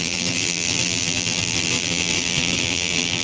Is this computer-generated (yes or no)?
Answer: yes